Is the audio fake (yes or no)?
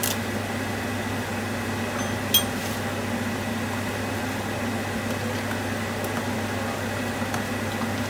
no